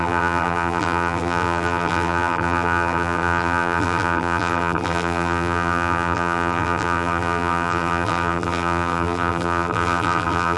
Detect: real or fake fake